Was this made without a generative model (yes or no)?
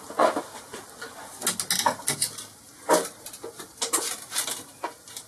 yes